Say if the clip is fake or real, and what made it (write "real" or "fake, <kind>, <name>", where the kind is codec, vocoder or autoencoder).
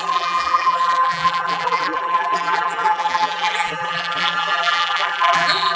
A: fake, vocoder, BigVGAN v2